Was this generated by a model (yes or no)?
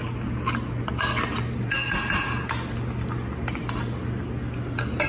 no